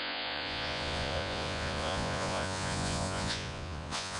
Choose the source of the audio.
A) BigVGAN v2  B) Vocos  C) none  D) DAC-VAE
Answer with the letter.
B